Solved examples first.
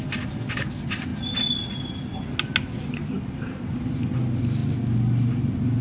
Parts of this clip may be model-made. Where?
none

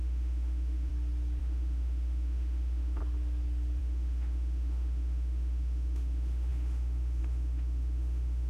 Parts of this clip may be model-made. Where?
0.0-0.9 (autoencoder, DAC-VAE); 1.4-3.0; 3.8-8.5

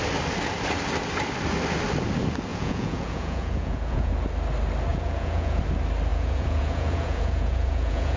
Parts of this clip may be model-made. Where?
2.5-4.1 (vocoder, Vocos); 4.9-5.6; 6.1-8.2

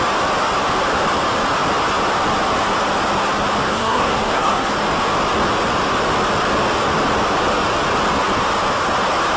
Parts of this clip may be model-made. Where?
3.7-4.7 (codec, SNAC)

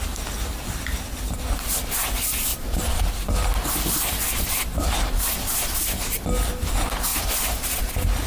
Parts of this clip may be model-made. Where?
2.5-3.1 (vocoder, BigVGAN v2)

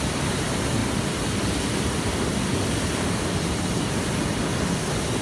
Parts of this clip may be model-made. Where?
none